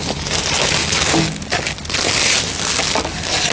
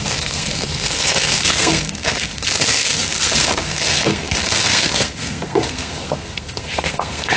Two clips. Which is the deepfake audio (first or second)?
second